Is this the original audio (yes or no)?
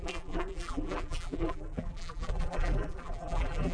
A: no